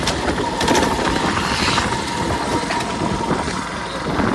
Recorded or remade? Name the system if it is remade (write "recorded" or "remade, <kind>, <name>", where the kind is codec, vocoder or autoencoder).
recorded